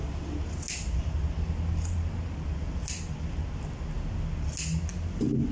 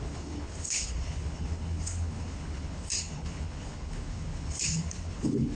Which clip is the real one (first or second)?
first